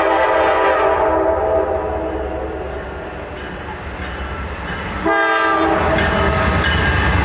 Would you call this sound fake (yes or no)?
no